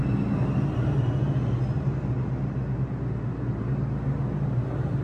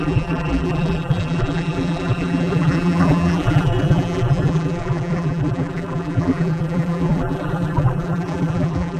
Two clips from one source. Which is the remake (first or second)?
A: second